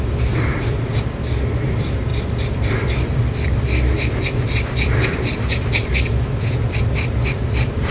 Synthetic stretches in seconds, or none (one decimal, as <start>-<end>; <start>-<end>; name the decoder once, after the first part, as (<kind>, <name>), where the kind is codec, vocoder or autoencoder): 0.0-0.9 (vocoder, BigVGAN v2); 1.5-7.9